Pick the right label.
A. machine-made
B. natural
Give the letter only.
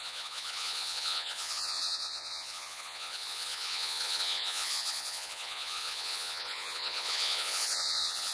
A